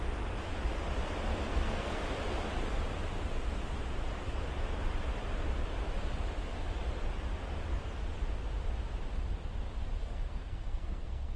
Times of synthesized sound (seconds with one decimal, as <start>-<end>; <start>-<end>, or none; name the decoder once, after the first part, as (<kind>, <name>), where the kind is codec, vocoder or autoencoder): 1.5-2.0 (codec, SNAC); 10.0-11.4